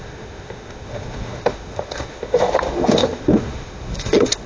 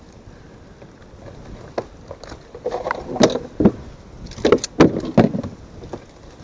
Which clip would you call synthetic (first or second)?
first